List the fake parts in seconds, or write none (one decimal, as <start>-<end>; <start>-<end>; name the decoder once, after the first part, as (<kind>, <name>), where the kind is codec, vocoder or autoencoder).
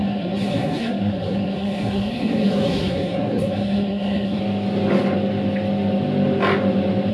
0.0-4.4 (codec, SNAC)